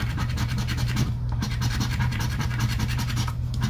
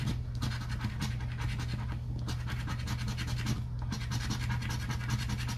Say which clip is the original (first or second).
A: second